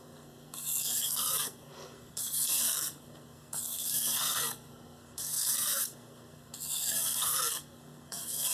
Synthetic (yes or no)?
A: yes